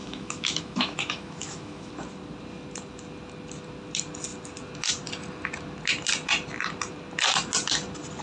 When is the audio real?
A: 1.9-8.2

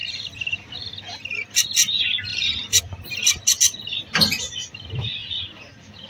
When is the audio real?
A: 0.7-6.1

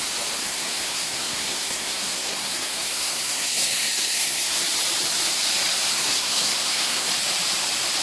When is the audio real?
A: 0.0-0.4; 4.6-5.9; 7.1-8.0

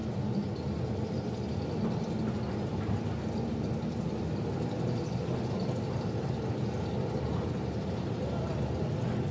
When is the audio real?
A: 0.0-9.3

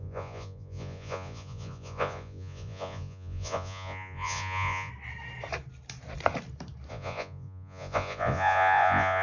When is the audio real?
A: 4.9-6.9

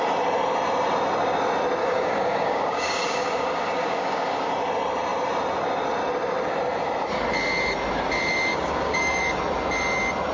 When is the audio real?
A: 0.0-1.8; 4.5-8.5; 9.2-10.3

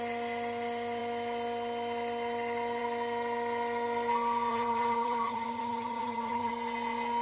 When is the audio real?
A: 0.0-4.5; 6.5-7.2